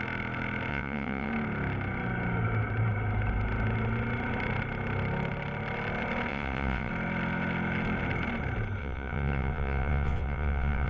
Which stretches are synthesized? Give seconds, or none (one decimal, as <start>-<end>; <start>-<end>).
0.7-1.3; 6.3-6.9; 8.8-10.9